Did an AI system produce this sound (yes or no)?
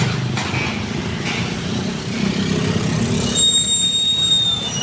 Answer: no